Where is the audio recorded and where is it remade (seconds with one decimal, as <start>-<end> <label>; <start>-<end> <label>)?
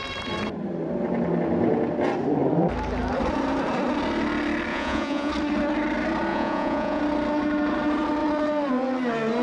0.0-4.7 recorded; 4.7-5.3 remade; 5.3-6.3 recorded; 6.3-7.0 remade; 7.0-9.4 recorded